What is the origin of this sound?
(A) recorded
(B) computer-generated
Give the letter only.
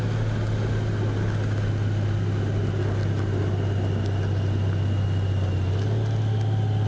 A